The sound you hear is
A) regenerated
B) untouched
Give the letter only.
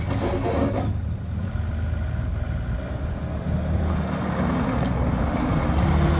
B